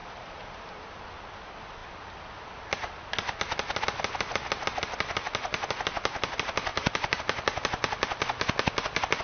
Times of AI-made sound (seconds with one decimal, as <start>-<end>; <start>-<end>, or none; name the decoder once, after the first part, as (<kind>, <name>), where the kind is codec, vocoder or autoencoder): 0.0-1.0 (vocoder, BigVGAN v2); 6.7-7.2